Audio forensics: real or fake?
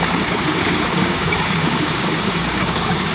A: fake